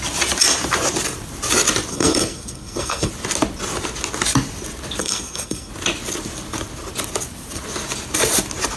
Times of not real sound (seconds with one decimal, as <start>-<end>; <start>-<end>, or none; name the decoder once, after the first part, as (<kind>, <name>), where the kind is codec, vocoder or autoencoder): 1.9-3.1 (codec, SNAC); 5.0-5.7